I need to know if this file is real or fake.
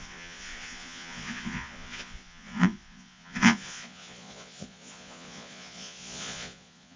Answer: fake